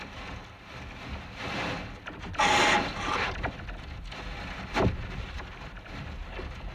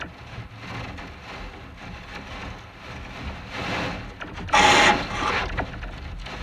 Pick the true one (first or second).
second